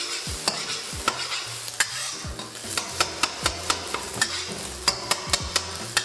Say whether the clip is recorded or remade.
recorded